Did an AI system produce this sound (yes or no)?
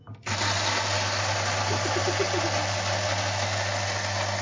no